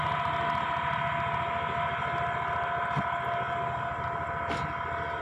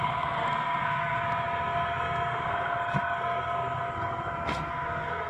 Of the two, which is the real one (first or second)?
first